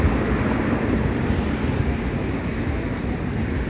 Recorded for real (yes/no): yes